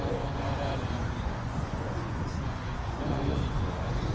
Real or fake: fake